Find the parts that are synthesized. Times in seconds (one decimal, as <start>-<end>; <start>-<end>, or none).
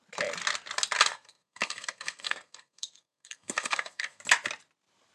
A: 1.1-4.2